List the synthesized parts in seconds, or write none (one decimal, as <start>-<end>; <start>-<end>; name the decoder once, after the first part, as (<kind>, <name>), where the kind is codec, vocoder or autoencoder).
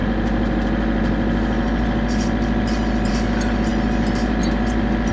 none